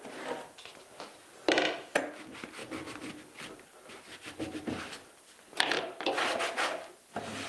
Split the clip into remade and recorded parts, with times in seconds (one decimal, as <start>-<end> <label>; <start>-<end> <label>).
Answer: 0.0-2.6 recorded; 2.6-3.5 remade; 3.5-7.5 recorded